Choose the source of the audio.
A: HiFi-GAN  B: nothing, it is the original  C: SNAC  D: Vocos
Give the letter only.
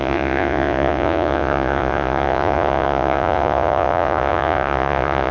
D